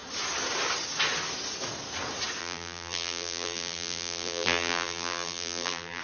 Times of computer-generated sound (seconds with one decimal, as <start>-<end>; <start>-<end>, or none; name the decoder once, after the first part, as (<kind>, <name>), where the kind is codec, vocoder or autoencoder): 2.4-6.0 (vocoder, BigVGAN v2)